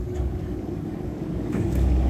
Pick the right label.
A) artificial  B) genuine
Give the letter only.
A